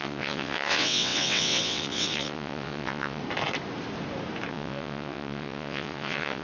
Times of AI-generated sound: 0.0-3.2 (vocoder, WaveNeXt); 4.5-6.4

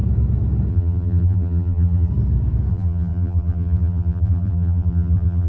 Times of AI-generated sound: 0.7-2.1 (vocoder, BigVGAN v2); 2.7-5.5

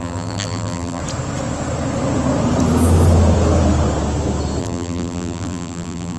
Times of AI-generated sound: 0.0-1.0 (vocoder, BigVGAN v2); 4.6-6.2

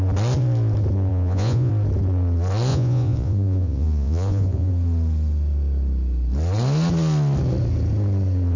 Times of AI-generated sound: 1.1-1.7 (vocoder, Vocos); 2.7-4.7

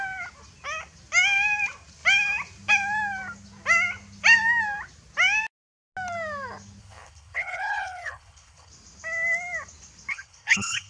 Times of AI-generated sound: 6.8-8.7 (codec, HILCodec); 10.1-10.9